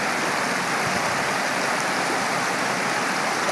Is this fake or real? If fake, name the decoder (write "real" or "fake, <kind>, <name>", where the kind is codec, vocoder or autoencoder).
real